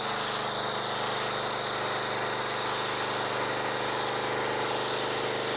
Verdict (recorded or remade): recorded